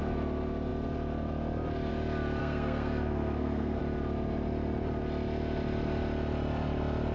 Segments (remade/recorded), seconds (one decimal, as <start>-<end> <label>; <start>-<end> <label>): 0.0-2.4 recorded; 2.4-3.8 remade; 3.8-7.1 recorded